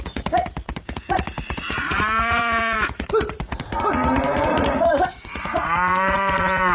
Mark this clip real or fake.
fake